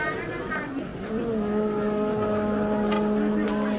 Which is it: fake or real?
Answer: real